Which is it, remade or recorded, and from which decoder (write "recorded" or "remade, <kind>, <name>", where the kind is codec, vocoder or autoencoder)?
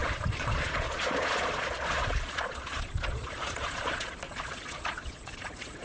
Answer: remade, vocoder, Vocos